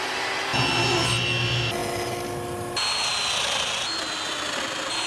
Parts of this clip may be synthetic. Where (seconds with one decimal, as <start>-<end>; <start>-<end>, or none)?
none